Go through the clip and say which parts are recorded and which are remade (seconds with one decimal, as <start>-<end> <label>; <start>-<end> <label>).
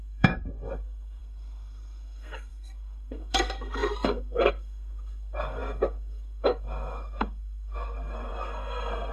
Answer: 0.0-9.1 remade